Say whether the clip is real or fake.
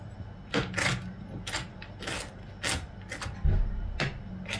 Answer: real